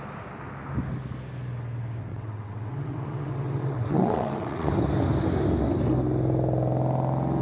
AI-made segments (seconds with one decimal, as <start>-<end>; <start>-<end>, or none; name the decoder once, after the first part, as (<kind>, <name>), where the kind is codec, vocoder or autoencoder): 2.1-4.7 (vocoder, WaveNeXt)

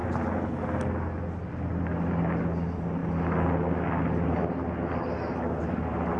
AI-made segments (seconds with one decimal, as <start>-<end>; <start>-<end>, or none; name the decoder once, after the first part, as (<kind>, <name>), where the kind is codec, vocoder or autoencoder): none

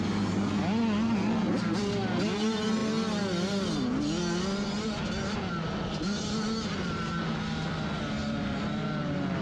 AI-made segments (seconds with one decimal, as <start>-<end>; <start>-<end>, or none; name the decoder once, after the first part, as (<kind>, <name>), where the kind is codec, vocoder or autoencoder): none

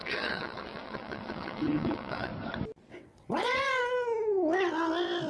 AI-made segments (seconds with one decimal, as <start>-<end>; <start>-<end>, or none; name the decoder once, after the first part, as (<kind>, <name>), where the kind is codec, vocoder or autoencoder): 0.0-2.3 (vocoder, WaveNeXt); 2.9-3.8

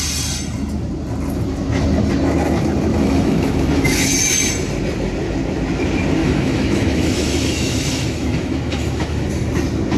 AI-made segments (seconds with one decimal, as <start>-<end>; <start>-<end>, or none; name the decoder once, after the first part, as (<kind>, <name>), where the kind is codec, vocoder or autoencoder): 2.9-4.1 (autoencoder, DAC-VAE); 6.2-9.3

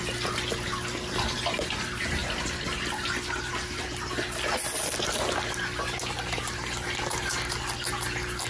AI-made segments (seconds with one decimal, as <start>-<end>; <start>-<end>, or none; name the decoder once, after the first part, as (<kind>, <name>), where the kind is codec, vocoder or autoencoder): none

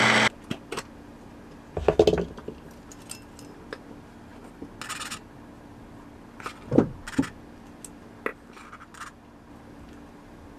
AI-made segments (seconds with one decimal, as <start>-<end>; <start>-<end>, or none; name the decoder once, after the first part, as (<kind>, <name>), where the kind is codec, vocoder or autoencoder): none